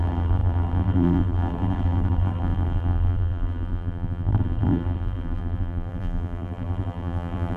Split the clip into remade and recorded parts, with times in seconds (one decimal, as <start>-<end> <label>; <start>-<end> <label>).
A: 0.0-7.6 remade